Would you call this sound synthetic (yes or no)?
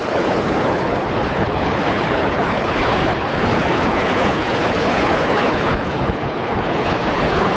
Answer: yes